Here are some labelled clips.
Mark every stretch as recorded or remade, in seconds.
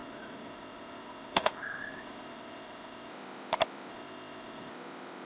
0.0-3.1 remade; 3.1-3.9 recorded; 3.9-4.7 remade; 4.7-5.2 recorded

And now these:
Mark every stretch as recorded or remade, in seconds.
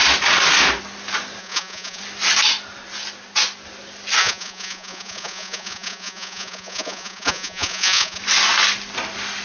0.0-1.4 recorded; 1.4-2.0 remade; 2.0-4.2 recorded; 4.2-8.2 remade; 8.2-9.4 recorded